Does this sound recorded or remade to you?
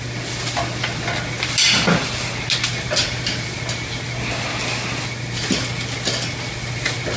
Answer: recorded